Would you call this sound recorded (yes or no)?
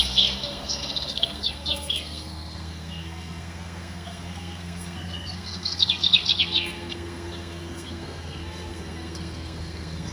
no